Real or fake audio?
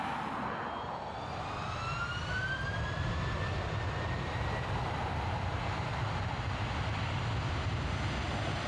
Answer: real